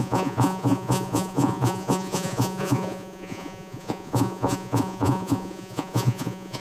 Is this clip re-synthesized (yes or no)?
yes